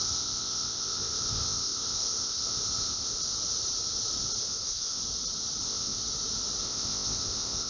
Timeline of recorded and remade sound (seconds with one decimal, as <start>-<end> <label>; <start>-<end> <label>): 0.0-3.2 remade; 3.2-4.4 recorded; 4.4-5.0 remade; 5.0-5.6 recorded; 5.6-6.0 remade; 6.0-6.6 recorded; 6.6-7.7 remade